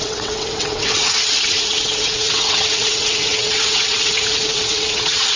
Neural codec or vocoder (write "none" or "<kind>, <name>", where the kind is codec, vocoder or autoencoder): vocoder, WaveNeXt